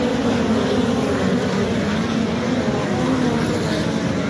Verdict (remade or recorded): recorded